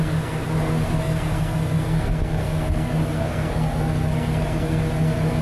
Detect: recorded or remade remade